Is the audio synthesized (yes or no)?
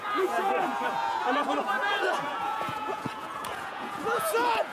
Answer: yes